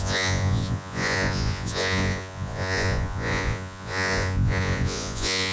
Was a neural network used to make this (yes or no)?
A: yes